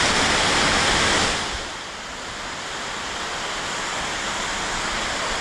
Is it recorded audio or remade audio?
recorded